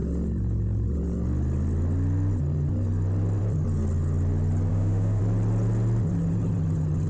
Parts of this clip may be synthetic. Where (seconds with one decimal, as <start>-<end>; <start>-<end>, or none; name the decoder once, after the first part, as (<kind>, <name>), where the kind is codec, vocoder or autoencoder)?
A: 4.7-5.2 (autoencoder, DAC-VAE)